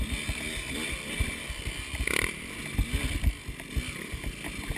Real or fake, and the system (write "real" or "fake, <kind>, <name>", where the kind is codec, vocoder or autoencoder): real